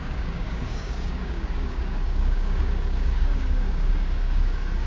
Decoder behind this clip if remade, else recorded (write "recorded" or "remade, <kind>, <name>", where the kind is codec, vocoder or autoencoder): remade, codec, DAC